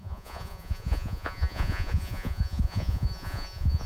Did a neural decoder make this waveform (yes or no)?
yes